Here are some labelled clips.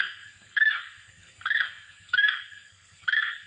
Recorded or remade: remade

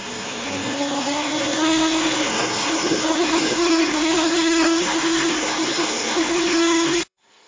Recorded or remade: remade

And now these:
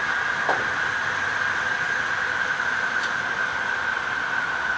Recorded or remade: recorded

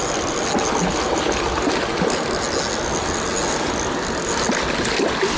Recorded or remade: recorded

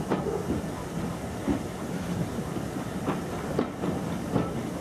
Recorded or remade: recorded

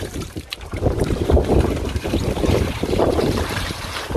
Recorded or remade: remade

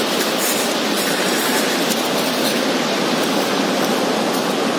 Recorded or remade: recorded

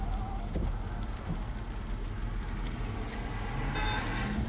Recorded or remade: recorded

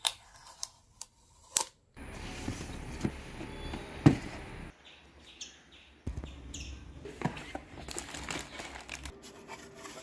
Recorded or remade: recorded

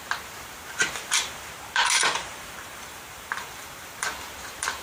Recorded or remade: remade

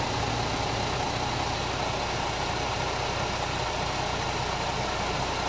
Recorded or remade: recorded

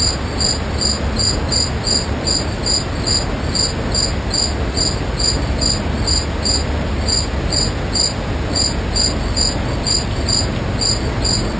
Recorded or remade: recorded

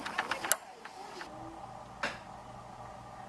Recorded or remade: recorded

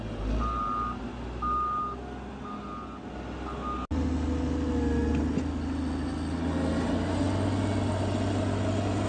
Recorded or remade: recorded